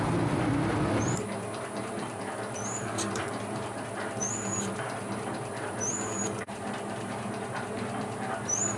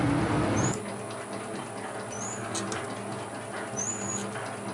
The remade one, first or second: first